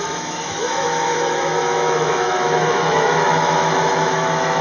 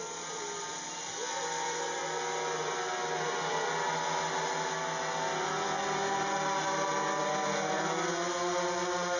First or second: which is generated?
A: first